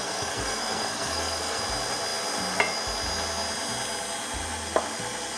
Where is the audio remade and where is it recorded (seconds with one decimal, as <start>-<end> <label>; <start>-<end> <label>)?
0.0-1.6 remade; 1.6-5.4 recorded